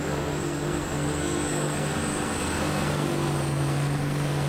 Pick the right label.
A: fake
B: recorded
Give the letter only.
A